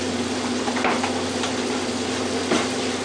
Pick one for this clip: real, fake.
real